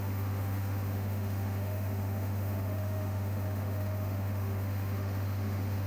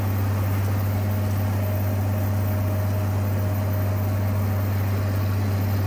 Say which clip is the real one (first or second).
second